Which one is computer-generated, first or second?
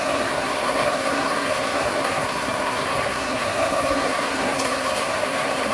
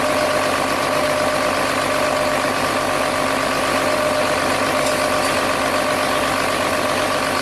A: first